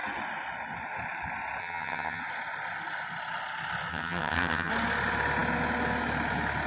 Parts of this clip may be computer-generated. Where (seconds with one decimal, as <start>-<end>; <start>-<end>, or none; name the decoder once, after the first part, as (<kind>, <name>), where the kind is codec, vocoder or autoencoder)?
1.6-2.2 (vocoder, HiFi-GAN); 3.9-4.7